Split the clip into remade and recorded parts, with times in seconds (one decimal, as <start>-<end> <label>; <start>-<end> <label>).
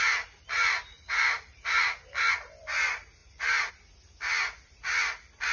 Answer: 0.0-0.9 recorded; 0.9-1.8 remade; 1.8-3.2 recorded; 3.2-3.7 remade; 3.7-5.5 recorded